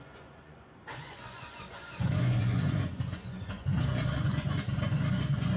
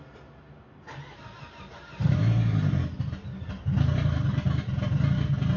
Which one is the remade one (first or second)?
first